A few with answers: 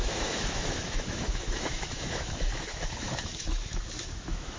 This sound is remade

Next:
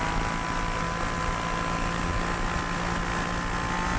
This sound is recorded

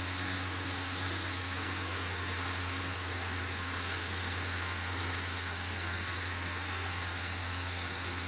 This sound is remade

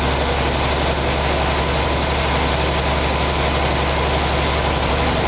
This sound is recorded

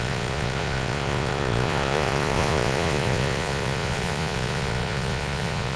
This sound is remade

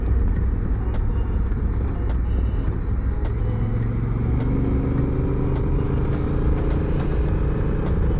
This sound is recorded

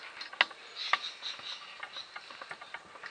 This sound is recorded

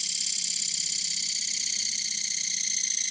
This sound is recorded